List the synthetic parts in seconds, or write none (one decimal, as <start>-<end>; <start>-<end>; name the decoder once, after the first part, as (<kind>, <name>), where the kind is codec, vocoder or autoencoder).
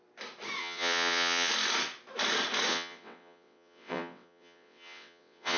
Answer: 0.6-1.5 (vocoder, WaveNeXt); 2.7-5.6